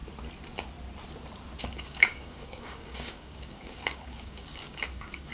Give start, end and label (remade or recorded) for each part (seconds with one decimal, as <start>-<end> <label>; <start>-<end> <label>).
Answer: 0.0-1.6 recorded; 1.6-5.3 remade